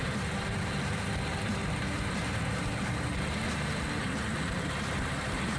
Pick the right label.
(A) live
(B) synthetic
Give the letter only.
B